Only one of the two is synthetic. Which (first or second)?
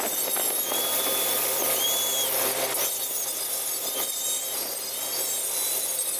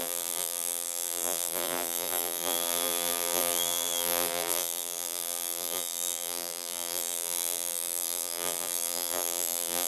second